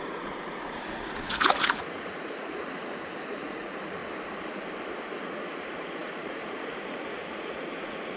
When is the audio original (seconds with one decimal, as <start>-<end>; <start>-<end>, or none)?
4.0-5.2